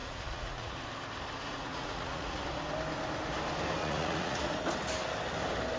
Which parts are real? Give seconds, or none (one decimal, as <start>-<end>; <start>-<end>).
0.8-1.4; 2.4-3.8; 4.4-5.8